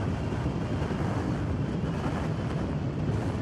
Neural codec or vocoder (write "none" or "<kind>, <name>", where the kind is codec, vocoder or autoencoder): none